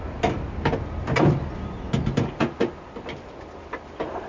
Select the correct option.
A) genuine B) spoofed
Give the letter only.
A